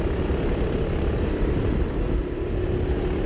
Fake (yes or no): no